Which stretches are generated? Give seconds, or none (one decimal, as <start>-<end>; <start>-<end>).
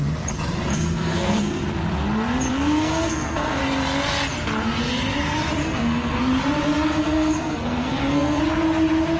0.7-1.6; 2.5-3.6; 5.6-6.2; 6.9-8.4